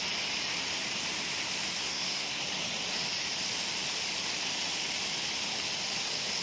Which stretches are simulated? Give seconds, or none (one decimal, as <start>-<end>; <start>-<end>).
1.8-2.4